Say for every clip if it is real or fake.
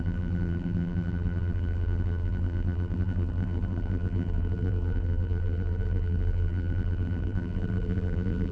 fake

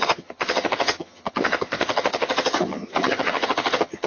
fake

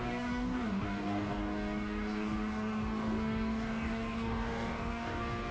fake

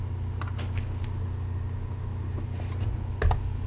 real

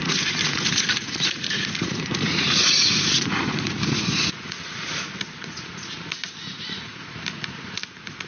fake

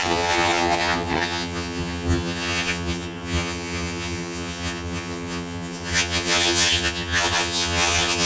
fake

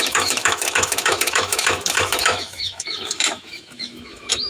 fake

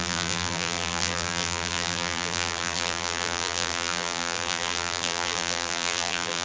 fake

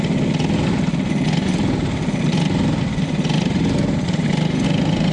real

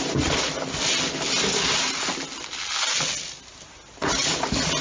real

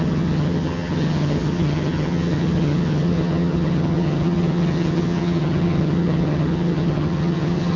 fake